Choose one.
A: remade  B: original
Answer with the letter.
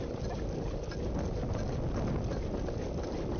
B